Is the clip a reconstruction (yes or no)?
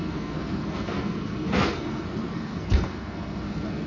yes